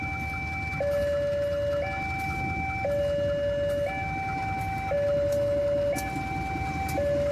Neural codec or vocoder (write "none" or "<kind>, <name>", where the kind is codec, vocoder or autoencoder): none